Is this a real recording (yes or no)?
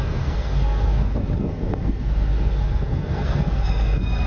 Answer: no